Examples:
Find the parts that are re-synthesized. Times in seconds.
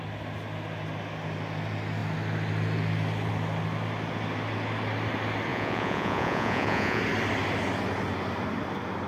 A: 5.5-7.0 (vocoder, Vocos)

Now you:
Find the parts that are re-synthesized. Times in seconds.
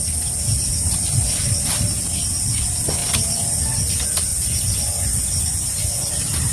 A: 4.3-6.1 (vocoder, Vocos)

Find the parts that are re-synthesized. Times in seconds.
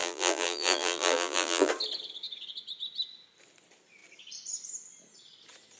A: 0.0-1.7 (vocoder, BigVGAN v2)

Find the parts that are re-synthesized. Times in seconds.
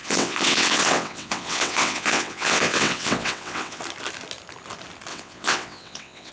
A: 0.0-3.8 (vocoder, WaveNeXt); 5.1-6.3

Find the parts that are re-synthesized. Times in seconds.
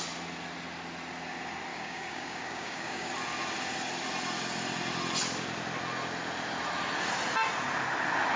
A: 1.7-3.1 (codec, DAC)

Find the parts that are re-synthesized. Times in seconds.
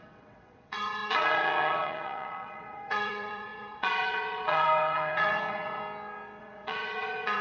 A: 0.0-5.8 (vocoder, WaveNeXt); 6.4-7.4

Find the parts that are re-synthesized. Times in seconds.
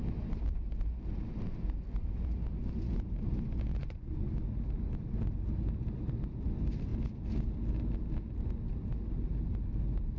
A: 3.7-4.3 (vocoder, Vocos)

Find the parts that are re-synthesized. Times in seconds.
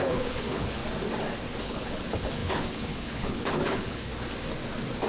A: 0.0-0.8 (codec, HILCodec); 1.6-4.1